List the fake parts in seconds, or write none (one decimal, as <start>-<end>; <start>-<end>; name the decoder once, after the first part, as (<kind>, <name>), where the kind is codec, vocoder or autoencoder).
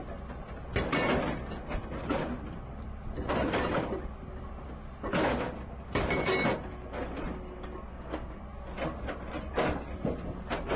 7.9-8.4 (codec, SNAC)